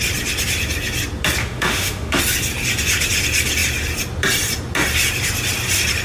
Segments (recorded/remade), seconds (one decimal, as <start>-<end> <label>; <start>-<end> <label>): 0.0-1.4 recorded; 1.4-2.2 remade; 2.2-6.0 recorded